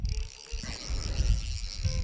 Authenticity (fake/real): real